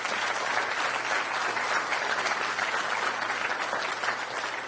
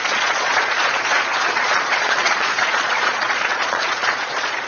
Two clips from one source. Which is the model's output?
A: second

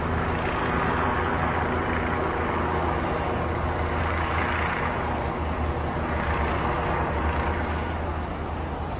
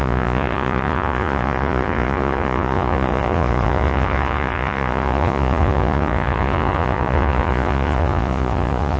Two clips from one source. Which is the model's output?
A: second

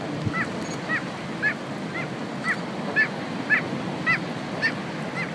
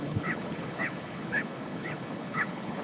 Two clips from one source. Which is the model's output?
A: second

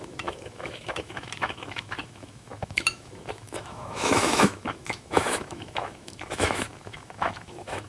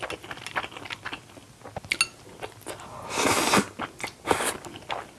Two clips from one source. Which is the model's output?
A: first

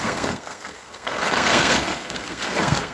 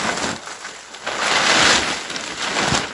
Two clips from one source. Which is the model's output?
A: first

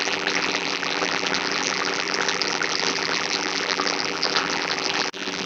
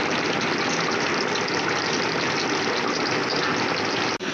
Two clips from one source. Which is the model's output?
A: first